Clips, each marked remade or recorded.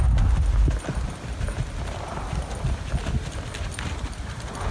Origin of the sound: recorded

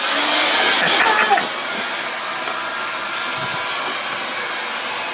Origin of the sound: recorded